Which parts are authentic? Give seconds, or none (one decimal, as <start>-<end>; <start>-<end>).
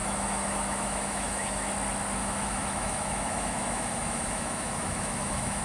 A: 1.7-2.2